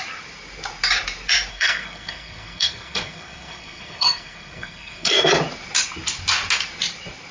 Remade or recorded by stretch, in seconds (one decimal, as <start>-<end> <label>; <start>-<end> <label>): 0.0-1.5 recorded; 1.5-5.3 remade; 5.3-7.3 recorded